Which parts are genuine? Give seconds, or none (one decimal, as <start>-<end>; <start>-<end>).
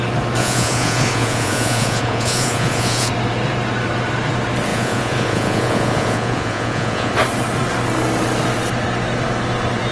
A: 0.0-0.4; 3.1-4.7; 7.1-9.9